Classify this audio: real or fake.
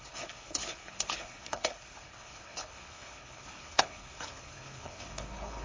fake